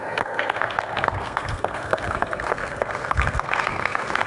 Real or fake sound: fake